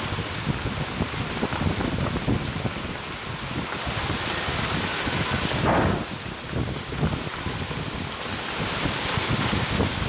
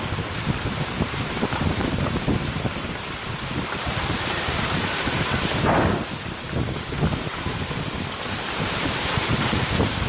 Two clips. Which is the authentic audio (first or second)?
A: first